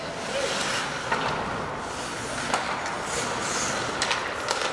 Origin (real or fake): real